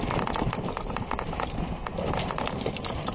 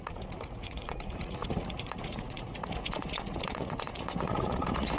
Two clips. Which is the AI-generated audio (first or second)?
second